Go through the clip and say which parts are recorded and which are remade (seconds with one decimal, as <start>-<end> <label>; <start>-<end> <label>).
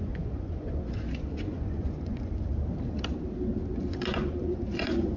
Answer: 0.0-2.5 remade; 2.5-3.7 recorded; 3.7-5.2 remade